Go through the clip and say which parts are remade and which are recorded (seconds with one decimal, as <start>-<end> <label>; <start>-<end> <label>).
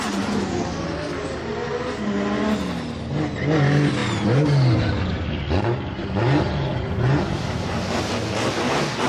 0.0-6.7 recorded; 6.7-8.1 remade; 8.1-9.1 recorded